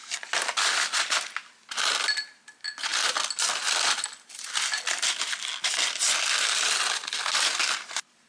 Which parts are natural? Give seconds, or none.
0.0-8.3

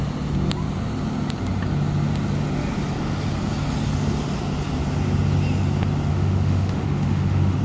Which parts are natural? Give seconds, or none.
0.0-6.1

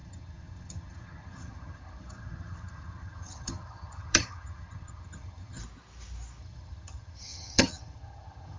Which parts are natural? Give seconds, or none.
5.6-6.4

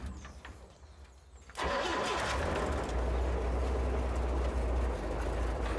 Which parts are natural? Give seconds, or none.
0.0-5.8

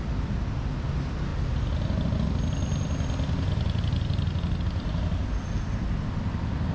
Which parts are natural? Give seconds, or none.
0.0-6.7